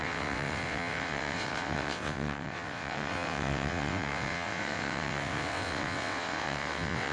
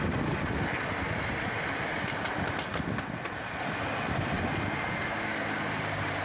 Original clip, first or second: second